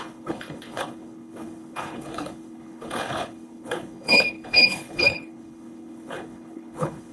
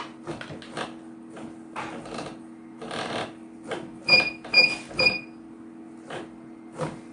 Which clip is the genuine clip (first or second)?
second